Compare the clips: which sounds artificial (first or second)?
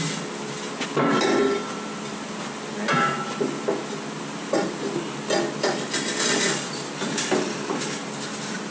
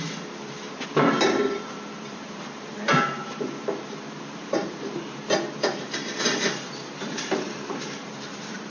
second